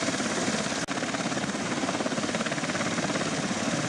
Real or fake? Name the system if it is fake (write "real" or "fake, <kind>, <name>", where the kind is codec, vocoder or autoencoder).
real